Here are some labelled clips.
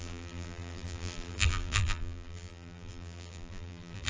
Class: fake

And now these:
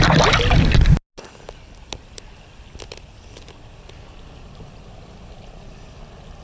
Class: real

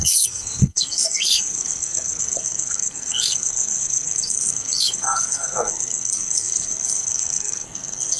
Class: fake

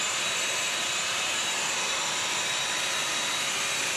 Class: fake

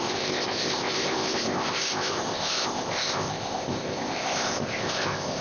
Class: fake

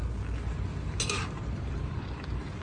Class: real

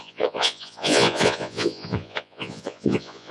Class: fake